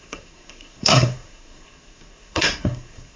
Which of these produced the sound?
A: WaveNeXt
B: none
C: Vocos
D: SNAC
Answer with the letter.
D